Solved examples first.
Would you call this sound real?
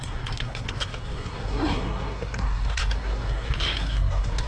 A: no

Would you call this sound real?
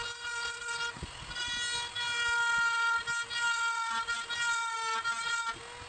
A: yes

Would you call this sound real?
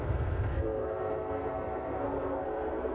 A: no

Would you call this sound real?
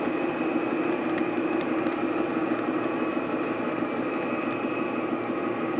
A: yes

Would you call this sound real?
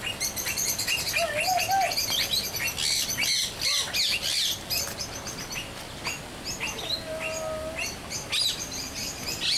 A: yes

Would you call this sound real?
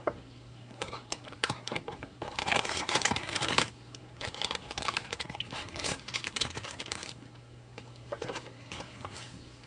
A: no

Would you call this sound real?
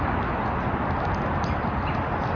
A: yes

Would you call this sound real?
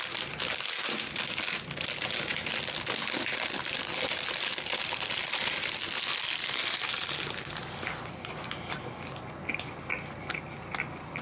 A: yes